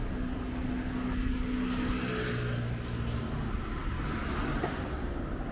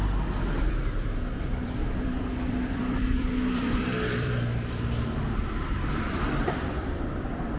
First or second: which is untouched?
first